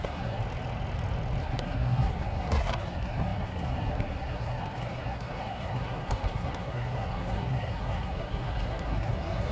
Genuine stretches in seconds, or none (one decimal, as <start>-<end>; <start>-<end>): 0.4-1.4